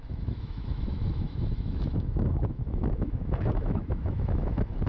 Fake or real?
fake